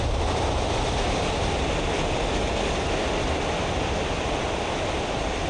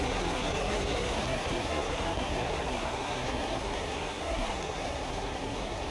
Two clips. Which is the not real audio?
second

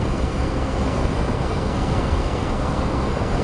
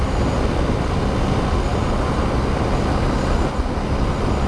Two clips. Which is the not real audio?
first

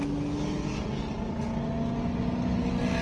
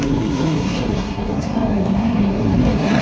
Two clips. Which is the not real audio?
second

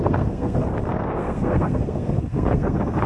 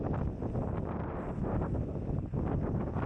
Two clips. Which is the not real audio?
first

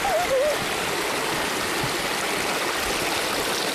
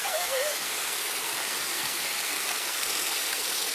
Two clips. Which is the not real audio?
second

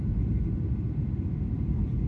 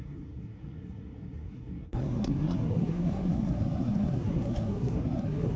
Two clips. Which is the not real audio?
second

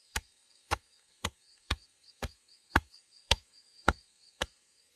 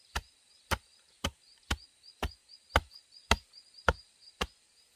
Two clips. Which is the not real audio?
first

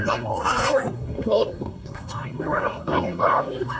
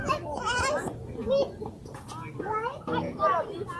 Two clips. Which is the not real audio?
first